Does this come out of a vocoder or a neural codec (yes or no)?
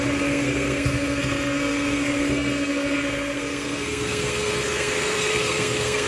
yes